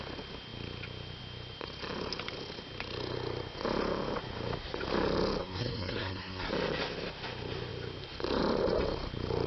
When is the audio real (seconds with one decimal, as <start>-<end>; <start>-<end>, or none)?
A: 0.0-5.4; 6.5-9.5